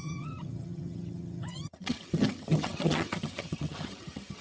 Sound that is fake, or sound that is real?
fake